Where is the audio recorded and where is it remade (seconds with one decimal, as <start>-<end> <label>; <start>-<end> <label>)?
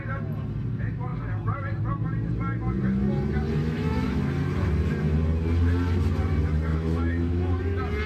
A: 0.0-3.6 recorded; 3.6-4.3 remade; 4.3-6.7 recorded; 6.7-7.6 remade; 7.6-8.1 recorded